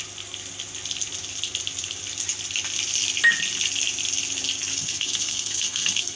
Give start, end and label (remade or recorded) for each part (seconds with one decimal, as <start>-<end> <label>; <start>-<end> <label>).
0.0-4.7 recorded; 4.7-6.2 remade